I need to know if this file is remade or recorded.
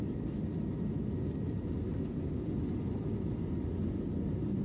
recorded